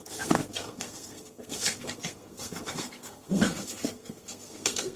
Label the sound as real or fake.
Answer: fake